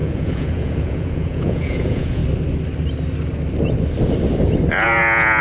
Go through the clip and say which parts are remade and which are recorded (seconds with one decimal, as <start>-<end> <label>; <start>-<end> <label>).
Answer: 0.0-2.2 remade; 2.2-4.7 recorded; 4.7-5.4 remade